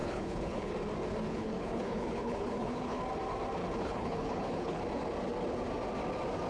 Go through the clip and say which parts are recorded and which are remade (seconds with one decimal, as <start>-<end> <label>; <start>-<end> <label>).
0.0-0.7 remade; 0.7-1.3 recorded; 1.3-3.0 remade; 3.0-3.6 recorded; 3.6-4.8 remade; 4.8-6.5 recorded